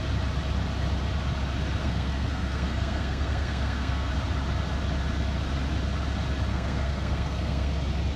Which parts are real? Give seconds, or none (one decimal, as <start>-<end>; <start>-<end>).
0.0-1.8; 4.1-6.5; 7.7-8.2